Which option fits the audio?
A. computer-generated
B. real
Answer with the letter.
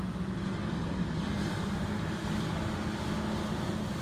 B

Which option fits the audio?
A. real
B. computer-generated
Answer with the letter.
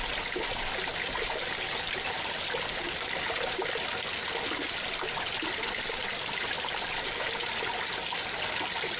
A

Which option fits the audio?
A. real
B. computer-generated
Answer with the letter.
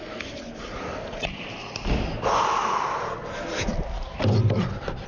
A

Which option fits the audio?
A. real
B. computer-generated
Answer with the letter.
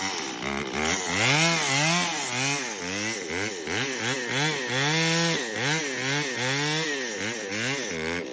A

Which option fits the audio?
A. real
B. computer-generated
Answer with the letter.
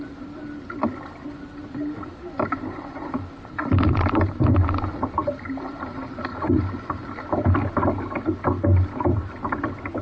A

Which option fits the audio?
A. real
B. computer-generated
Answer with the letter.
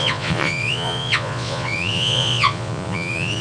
B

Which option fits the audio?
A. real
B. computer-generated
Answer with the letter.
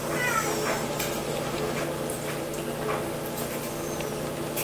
A